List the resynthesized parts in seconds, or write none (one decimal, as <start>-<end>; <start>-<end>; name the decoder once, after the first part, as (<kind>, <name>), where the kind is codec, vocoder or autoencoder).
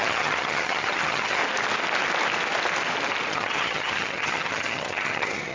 0.0-1.4 (vocoder, HiFi-GAN); 3.3-5.5